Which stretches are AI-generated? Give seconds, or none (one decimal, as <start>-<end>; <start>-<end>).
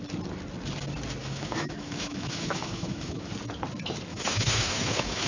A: 1.2-3.3; 4.1-5.3